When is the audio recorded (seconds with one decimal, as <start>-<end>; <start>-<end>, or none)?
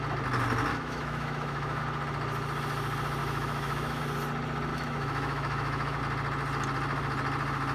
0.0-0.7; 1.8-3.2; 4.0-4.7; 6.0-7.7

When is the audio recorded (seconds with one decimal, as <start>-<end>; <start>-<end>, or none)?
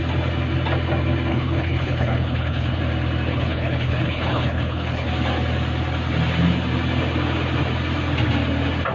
0.0-1.3; 2.8-3.3; 5.1-8.9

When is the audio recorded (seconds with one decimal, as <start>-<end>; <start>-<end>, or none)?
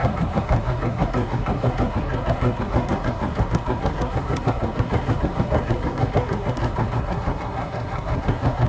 none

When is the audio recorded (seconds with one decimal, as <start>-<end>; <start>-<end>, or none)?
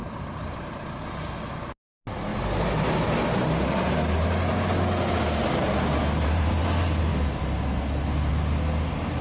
1.0-2.3; 2.9-5.9; 6.6-9.2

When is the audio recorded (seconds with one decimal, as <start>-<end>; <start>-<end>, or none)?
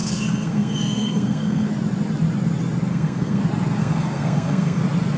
1.7-2.9; 3.4-3.8; 4.8-5.2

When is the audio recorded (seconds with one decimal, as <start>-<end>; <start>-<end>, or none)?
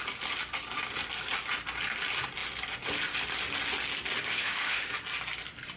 0.0-4.3; 4.9-5.8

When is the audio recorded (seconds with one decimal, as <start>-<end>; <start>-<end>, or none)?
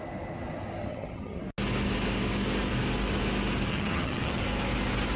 0.0-0.9; 1.4-3.7; 4.4-5.2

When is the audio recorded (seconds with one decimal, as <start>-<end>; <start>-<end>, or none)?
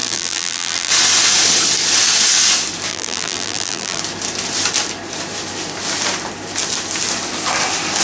0.9-2.9; 4.0-8.0